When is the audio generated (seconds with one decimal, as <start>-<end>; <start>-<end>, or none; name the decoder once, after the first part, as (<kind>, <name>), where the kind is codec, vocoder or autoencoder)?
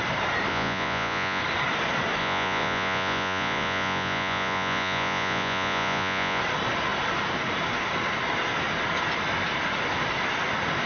0.5-1.4 (vocoder, Vocos); 2.2-6.4